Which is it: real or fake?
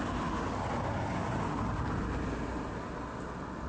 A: real